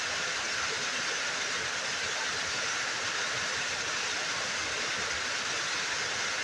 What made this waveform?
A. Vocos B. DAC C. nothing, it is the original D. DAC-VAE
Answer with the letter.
C